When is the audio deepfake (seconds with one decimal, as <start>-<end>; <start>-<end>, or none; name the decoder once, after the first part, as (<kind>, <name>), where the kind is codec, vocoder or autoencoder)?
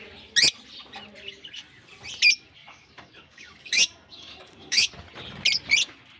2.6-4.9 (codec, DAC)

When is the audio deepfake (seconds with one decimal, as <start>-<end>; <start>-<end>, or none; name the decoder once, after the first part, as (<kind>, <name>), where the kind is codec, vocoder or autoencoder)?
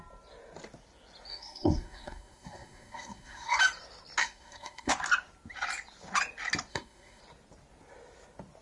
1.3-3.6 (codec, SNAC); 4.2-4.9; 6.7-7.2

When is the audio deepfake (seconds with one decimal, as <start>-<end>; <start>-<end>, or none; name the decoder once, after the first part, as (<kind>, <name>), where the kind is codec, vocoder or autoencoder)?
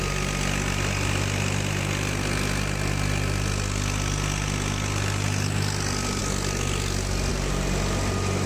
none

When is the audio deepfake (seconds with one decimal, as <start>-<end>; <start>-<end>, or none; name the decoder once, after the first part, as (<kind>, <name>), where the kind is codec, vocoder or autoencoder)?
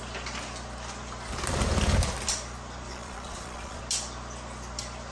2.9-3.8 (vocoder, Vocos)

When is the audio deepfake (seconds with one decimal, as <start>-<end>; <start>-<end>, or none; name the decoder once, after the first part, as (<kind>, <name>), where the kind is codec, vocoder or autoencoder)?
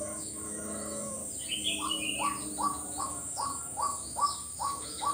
0.0-1.2 (autoencoder, DAC-VAE); 3.0-5.1